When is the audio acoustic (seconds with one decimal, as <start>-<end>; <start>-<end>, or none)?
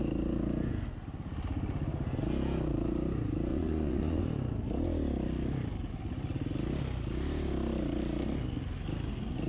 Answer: 0.0-3.5; 4.2-9.5